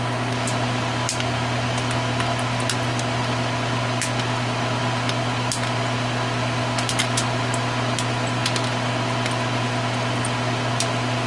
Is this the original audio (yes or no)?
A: yes